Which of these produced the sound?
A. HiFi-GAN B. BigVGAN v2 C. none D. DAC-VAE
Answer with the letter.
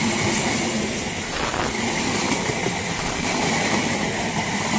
C